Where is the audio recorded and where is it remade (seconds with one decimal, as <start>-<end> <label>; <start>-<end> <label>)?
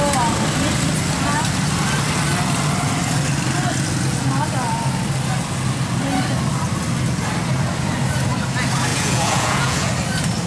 0.0-8.9 recorded; 8.9-9.9 remade; 9.9-10.5 recorded